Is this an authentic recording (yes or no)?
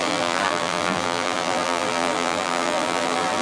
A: no